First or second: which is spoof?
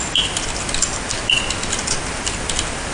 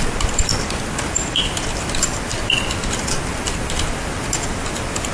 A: second